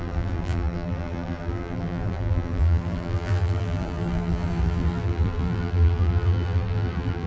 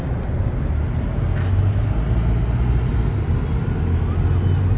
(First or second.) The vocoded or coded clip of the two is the first